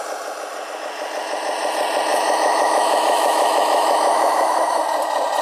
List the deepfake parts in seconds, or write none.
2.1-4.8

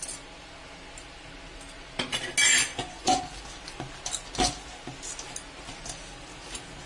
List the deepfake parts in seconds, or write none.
2.7-3.2

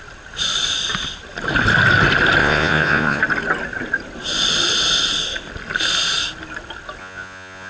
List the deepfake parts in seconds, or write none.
2.4-3.2; 7.0-7.7

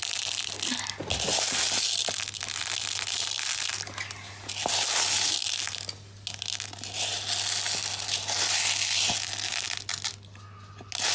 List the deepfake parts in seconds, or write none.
none

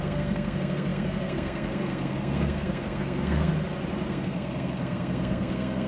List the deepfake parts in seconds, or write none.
0.0-3.5; 4.1-5.9

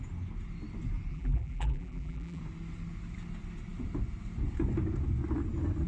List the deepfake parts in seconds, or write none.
1.1-2.4

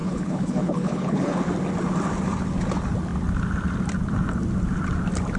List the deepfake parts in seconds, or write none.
0.0-1.4

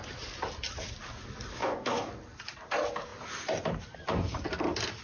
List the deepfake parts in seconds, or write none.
1.6-2.1